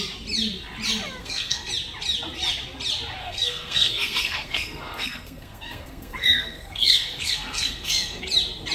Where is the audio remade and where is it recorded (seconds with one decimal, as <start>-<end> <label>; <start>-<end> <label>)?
0.0-1.2 recorded; 1.2-1.7 remade; 1.7-3.2 recorded; 3.2-8.2 remade; 8.2-8.7 recorded